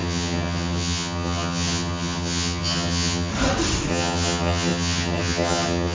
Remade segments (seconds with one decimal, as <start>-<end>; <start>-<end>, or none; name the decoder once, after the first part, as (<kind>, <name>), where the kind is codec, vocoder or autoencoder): 0.0-3.3 (vocoder, HiFi-GAN); 3.9-5.9